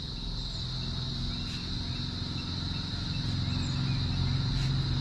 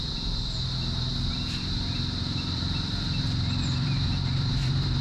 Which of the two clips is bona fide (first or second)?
first